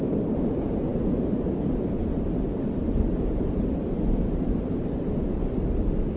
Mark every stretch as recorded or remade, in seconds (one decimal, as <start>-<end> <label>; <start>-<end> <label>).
0.0-5.4 remade; 5.4-6.2 recorded